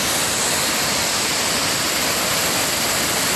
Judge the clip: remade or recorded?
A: recorded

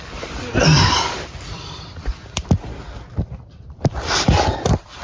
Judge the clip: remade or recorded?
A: remade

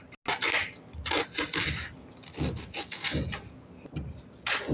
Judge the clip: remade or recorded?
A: recorded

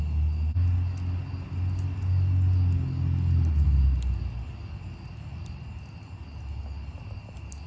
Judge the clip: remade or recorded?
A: recorded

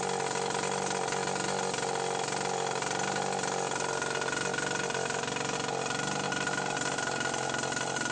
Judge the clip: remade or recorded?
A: recorded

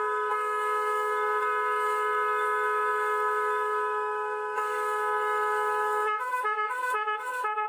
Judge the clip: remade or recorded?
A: remade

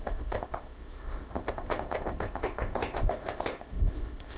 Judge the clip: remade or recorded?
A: remade